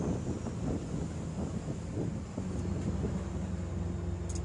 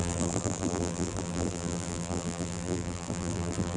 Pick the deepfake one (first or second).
second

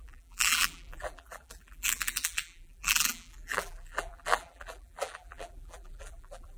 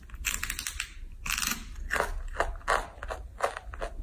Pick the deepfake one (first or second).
first